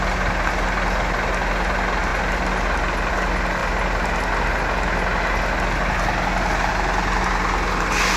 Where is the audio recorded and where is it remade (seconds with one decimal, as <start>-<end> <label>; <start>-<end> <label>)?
0.0-8.2 recorded